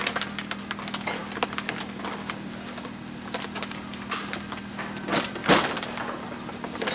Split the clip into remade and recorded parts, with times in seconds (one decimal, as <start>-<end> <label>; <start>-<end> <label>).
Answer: 0.0-6.9 recorded